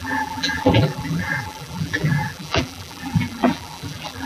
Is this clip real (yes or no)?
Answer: no